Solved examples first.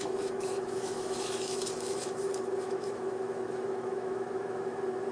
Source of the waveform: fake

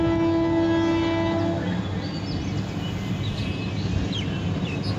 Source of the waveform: real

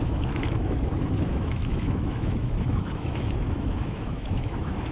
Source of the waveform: fake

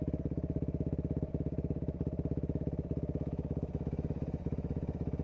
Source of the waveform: fake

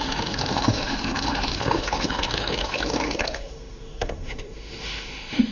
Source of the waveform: fake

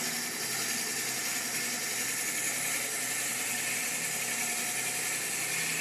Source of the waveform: real